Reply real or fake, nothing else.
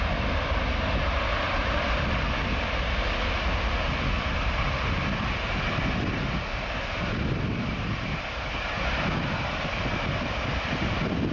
real